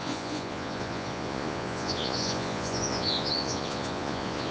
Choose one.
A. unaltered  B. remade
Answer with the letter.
B